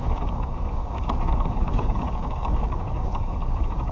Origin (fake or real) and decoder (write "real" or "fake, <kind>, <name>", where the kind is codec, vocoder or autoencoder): fake, codec, DAC